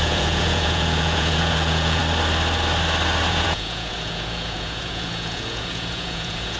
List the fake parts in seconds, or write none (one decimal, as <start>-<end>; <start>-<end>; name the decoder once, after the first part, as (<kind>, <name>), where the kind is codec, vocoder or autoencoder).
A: 0.0-2.0 (vocoder, Vocos); 3.3-6.6